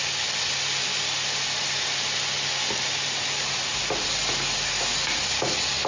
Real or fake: real